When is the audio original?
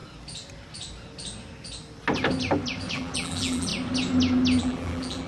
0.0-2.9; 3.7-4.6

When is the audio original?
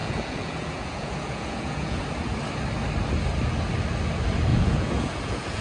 2.0-4.5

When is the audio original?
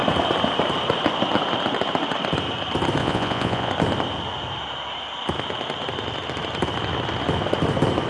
0.0-3.0; 3.7-8.1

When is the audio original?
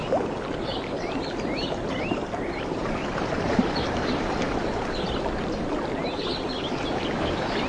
0.0-1.6; 4.5-7.7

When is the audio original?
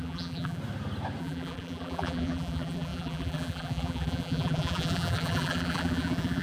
0.6-1.2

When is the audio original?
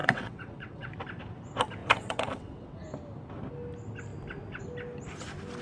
0.9-1.8; 2.8-5.6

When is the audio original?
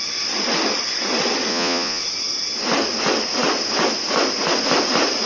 0.0-1.5; 2.0-5.3